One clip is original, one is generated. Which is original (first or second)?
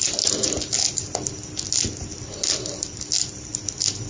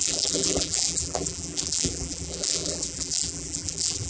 first